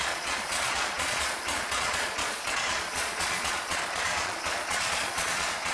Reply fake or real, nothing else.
fake